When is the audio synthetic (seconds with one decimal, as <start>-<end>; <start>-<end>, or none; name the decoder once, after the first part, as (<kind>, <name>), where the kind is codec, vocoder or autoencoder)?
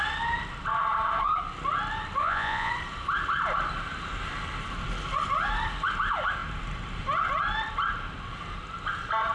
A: 2.2-2.7 (vocoder, Vocos)